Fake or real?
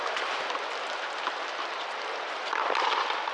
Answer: fake